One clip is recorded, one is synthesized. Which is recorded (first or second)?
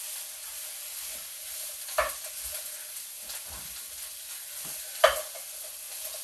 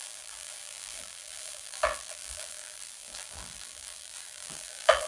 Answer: first